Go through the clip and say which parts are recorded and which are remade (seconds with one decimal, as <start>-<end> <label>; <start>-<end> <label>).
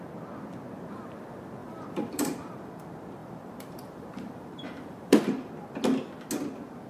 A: 0.0-1.6 recorded; 1.6-2.8 remade; 2.8-3.2 recorded; 3.2-5.5 remade; 5.5-6.9 recorded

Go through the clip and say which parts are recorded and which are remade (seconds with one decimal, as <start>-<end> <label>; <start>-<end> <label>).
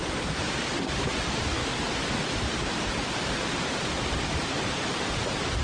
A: 0.0-1.6 remade; 1.6-2.6 recorded; 2.6-5.6 remade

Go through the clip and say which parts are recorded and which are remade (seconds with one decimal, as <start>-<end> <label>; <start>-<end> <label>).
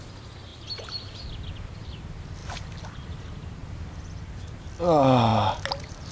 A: 0.0-0.5 recorded; 0.5-1.9 remade; 1.9-2.4 recorded; 2.4-3.2 remade; 3.2-3.6 recorded; 3.6-4.1 remade; 4.1-6.1 recorded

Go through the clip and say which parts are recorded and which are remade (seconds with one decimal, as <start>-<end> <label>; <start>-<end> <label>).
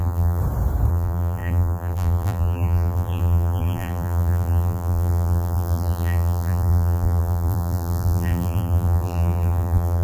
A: 0.0-0.4 remade; 0.4-0.9 recorded; 0.9-10.0 remade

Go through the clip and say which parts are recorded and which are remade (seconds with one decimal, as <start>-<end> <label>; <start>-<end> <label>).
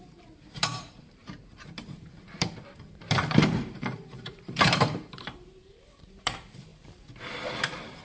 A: 0.0-8.0 remade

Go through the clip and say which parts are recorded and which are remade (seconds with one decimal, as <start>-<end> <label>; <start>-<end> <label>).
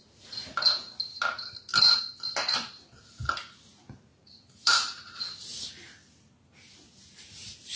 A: 0.0-4.1 recorded; 4.1-5.7 remade; 5.7-7.8 recorded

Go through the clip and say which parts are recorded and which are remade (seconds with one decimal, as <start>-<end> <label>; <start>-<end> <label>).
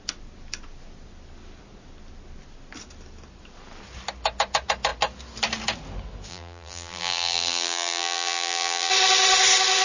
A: 0.0-6.3 recorded; 6.3-8.9 remade; 8.9-9.8 recorded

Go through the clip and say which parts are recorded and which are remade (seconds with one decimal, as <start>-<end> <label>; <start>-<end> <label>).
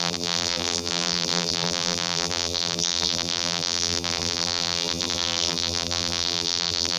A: 0.0-7.0 remade